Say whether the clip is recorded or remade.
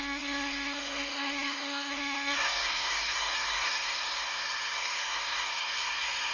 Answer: remade